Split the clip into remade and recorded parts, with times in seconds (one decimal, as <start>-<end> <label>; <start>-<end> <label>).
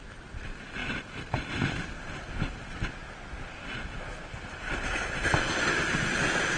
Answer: 0.0-6.6 recorded